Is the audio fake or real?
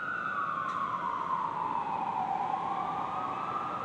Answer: real